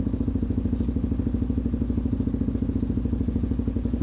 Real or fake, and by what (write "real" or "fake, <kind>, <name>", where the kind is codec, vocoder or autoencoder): real